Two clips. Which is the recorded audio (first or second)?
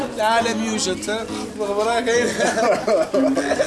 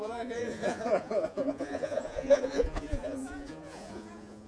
first